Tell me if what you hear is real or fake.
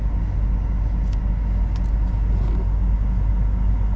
real